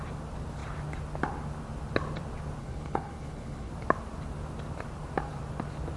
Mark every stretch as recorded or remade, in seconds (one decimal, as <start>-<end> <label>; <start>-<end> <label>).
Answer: 0.0-2.6 recorded; 2.6-3.7 remade; 3.7-6.0 recorded